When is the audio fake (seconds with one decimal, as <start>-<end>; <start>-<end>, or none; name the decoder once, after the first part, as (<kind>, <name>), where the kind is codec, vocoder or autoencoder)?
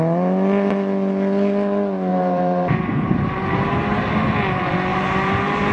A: 2.1-4.1 (vocoder, BigVGAN v2); 4.9-5.7